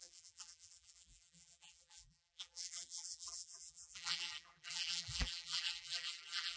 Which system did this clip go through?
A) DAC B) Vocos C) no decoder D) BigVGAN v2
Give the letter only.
D